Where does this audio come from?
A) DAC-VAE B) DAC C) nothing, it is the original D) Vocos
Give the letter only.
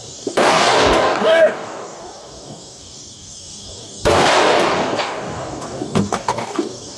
B